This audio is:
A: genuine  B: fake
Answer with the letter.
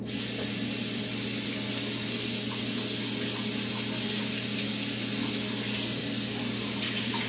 A